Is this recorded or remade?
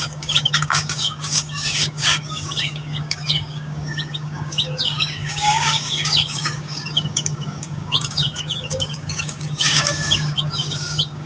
remade